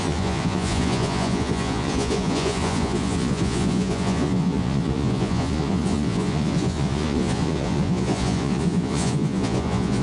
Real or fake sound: fake